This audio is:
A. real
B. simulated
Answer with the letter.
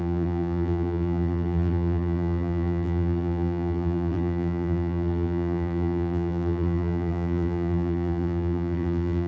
B